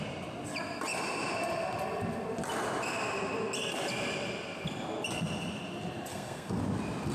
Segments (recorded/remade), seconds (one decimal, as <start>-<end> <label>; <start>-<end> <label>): 0.0-6.1 recorded; 6.1-6.6 remade; 6.6-7.1 recorded